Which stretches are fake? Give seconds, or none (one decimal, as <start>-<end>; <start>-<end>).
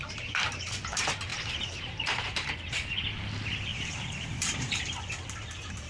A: 1.3-2.5; 3.7-5.0